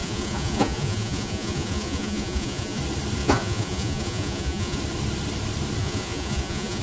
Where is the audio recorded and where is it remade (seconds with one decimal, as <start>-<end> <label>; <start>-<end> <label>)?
0.0-2.8 remade; 2.8-3.2 recorded; 3.2-4.8 remade; 4.8-5.8 recorded; 5.8-6.8 remade